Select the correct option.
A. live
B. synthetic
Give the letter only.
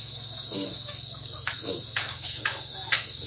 B